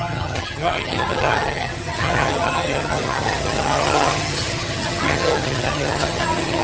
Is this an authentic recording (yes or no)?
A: no